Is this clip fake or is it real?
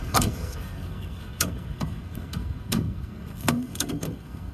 fake